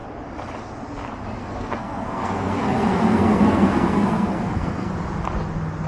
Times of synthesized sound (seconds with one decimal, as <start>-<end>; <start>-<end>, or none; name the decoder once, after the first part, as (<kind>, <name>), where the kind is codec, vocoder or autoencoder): 1.4-4.9 (codec, SNAC)